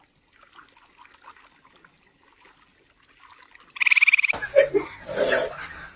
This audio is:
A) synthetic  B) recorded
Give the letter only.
B